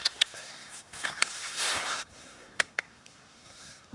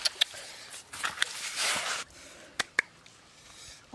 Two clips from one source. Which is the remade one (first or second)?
first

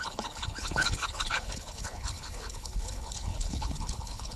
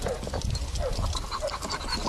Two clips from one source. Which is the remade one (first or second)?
first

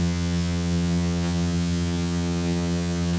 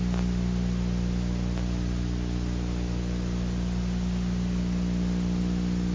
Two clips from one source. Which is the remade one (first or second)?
first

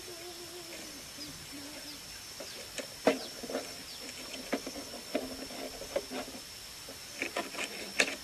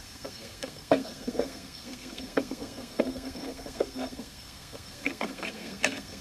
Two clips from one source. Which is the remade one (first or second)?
second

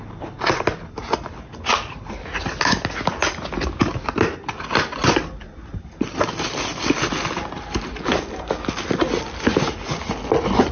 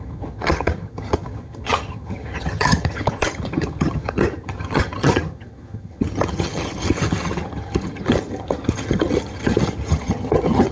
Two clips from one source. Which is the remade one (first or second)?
second